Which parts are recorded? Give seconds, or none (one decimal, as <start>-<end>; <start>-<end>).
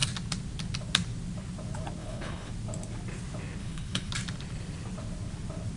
0.0-2.0; 2.5-3.6; 4.1-5.8